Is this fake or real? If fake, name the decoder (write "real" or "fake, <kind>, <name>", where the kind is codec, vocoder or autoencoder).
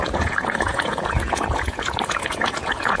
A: fake, vocoder, Vocos